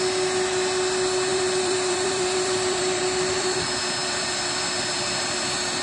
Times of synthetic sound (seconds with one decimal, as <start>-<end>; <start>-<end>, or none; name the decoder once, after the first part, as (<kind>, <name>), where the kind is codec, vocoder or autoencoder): 1.3-3.0 (vocoder, BigVGAN v2); 4.0-4.8